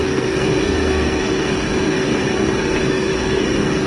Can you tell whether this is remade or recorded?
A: remade